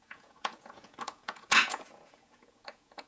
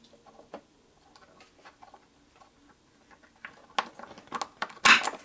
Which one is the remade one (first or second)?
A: first